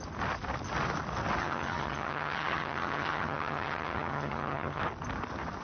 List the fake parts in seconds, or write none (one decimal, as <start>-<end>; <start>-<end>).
1.4-4.8